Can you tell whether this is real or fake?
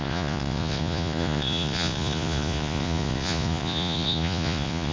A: fake